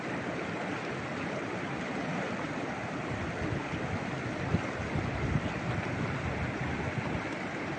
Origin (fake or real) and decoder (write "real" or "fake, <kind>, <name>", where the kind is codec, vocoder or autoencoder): real